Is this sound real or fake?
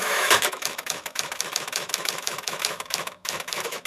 fake